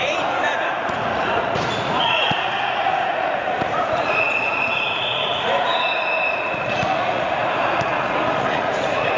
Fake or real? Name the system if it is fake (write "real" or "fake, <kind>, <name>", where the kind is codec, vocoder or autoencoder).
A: fake, vocoder, Vocos